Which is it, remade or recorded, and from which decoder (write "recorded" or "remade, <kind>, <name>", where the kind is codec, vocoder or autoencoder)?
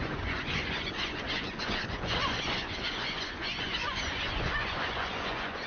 remade, vocoder, Vocos